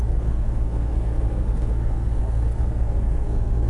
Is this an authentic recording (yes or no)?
no